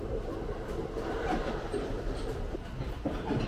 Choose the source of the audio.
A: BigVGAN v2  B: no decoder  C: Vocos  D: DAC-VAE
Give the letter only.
B